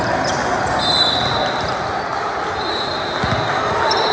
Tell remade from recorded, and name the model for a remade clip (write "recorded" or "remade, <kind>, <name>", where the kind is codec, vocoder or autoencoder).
recorded